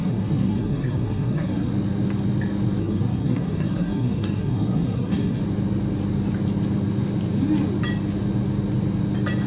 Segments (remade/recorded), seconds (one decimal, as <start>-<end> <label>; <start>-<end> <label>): 0.0-1.7 remade; 1.7-2.8 recorded; 2.8-5.4 remade; 5.4-9.5 recorded